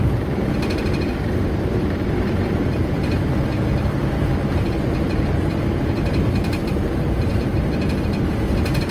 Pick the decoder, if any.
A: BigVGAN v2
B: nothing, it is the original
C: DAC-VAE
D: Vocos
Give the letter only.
A